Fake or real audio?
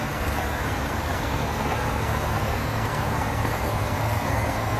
fake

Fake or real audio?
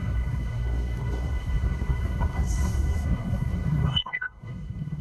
fake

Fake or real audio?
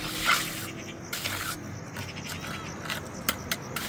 real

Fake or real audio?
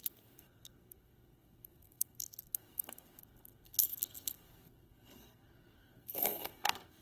fake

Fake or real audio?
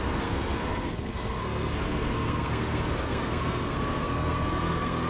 fake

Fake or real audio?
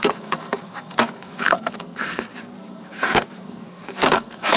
fake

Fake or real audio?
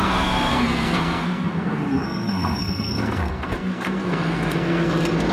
fake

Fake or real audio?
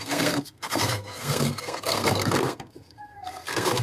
fake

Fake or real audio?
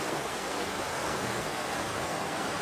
fake